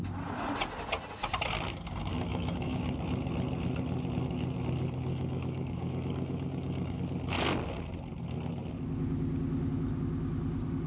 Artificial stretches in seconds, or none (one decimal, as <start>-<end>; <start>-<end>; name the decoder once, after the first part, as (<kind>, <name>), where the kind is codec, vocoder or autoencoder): 1.7-2.9 (codec, DAC); 5.1-7.0